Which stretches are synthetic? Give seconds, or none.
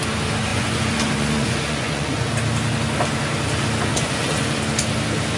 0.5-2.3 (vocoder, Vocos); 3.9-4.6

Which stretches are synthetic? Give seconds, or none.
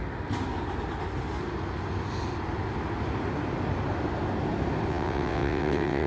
4.9-6.1 (vocoder, WaveNeXt)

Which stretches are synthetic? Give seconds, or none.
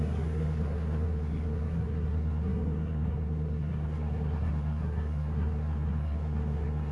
0.0-6.9 (codec, SNAC)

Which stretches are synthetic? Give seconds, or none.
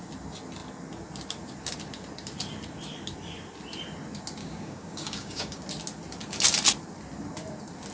4.4-5.6 (codec, DAC)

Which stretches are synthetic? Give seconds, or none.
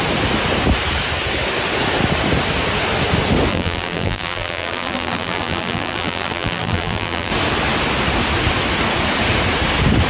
3.5-7.3 (vocoder, BigVGAN v2)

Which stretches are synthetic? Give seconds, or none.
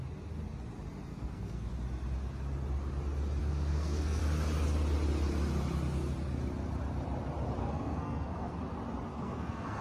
1.1-1.7 (codec, SNAC); 3.4-4.2; 7.6-8.6; 9.1-9.8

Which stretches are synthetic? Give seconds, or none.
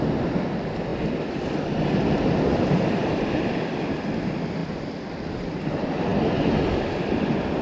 none